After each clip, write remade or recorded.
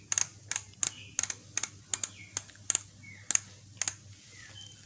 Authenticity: recorded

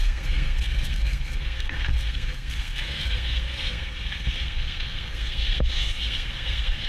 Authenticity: remade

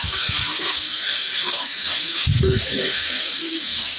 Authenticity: remade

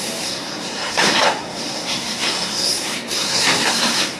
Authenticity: remade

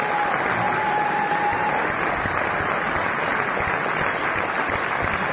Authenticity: recorded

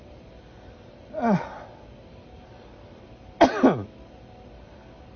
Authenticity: recorded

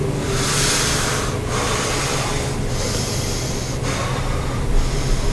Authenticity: recorded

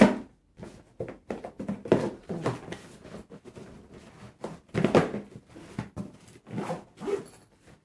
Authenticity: recorded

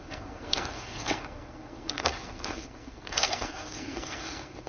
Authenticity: remade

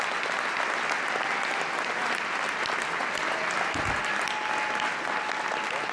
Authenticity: recorded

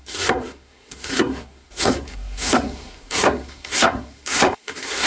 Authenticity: remade